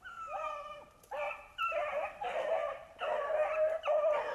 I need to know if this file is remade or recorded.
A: recorded